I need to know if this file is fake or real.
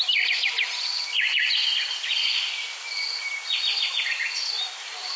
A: real